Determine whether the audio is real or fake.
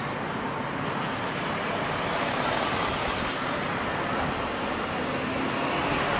real